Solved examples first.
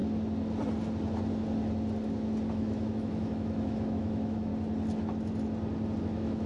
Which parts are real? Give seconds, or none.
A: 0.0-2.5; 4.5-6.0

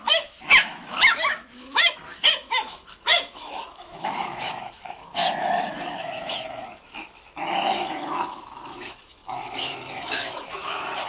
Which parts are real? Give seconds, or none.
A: 5.2-5.9